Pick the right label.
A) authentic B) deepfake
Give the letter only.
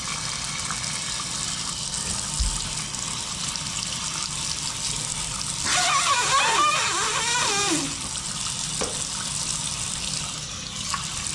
A